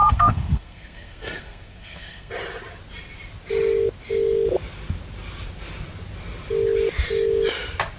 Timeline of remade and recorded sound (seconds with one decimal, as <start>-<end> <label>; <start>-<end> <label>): 0.0-2.3 remade; 2.3-8.0 recorded